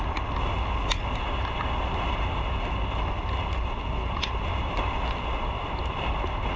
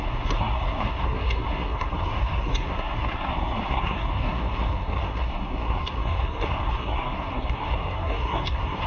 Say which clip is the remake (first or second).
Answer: second